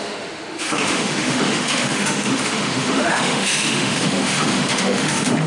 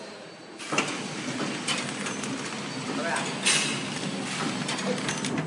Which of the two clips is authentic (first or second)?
second